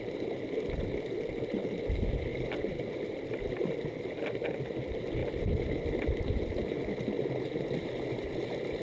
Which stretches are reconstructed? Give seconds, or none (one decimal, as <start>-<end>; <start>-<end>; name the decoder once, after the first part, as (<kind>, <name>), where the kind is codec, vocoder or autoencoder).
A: none